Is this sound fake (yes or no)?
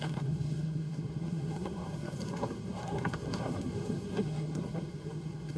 yes